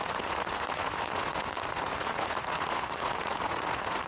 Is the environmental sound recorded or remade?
remade